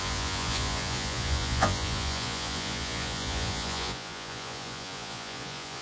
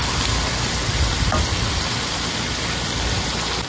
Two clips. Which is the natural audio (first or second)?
second